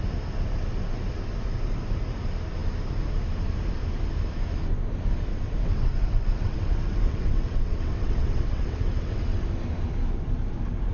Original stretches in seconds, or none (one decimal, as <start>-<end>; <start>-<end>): 0.0-5.3; 9.4-10.9